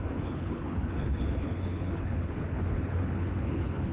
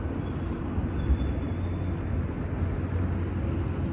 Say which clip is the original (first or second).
second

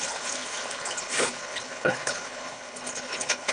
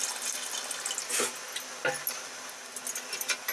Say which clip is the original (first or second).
second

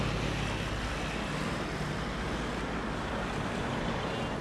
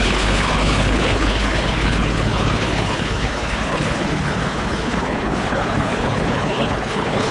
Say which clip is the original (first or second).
first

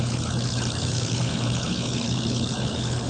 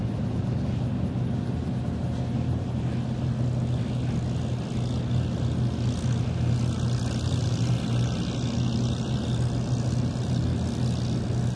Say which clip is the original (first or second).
second